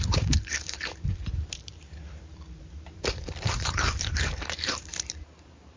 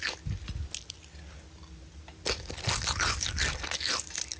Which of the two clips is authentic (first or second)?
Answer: second